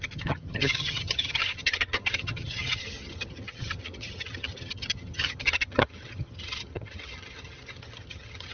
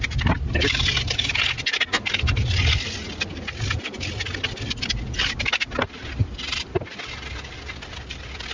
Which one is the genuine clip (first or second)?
second